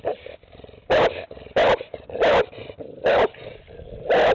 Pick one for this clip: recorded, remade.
recorded